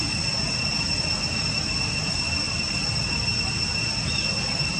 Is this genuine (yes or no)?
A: yes